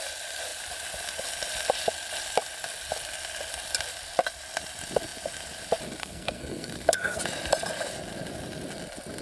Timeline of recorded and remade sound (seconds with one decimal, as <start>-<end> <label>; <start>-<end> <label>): 0.0-6.0 recorded; 6.0-7.2 remade; 7.2-9.2 recorded